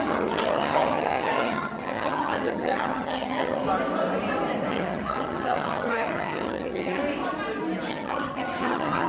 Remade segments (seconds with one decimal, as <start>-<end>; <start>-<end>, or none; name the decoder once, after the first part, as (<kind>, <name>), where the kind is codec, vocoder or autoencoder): 0.0-3.6 (vocoder, HiFi-GAN); 4.7-7.0; 7.9-9.1